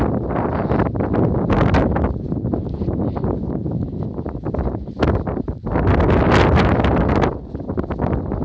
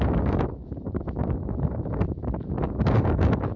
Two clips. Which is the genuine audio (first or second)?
first